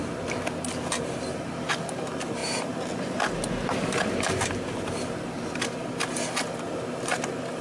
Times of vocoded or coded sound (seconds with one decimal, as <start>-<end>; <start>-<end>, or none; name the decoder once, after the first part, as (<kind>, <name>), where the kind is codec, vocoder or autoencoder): none